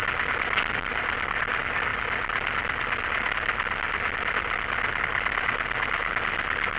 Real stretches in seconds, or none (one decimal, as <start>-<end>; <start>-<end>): 0.0-6.8